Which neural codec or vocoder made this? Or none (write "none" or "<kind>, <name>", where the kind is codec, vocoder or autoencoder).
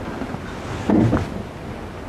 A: none